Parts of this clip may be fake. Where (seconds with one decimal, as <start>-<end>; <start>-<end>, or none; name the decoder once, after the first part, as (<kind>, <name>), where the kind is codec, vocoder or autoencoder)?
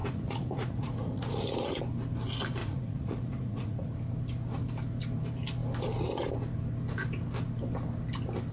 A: 0.0-1.8 (vocoder, Vocos); 2.6-3.9